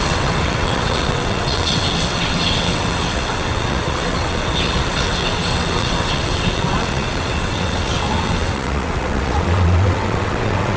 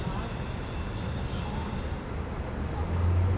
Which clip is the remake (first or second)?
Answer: first